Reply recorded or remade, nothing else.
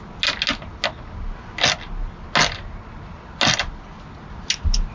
recorded